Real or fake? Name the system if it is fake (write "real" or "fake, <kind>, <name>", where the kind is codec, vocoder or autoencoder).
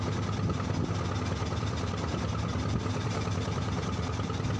real